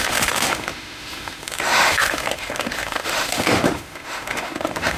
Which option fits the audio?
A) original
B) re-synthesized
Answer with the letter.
B